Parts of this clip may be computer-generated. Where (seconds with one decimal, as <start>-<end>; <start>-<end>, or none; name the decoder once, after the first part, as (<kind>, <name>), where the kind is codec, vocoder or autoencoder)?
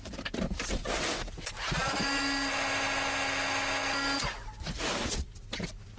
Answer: 0.0-1.8 (vocoder, BigVGAN v2); 5.4-6.0